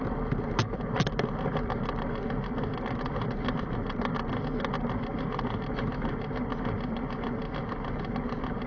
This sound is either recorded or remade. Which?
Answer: recorded